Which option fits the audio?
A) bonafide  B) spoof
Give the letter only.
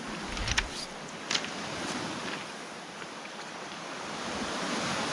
B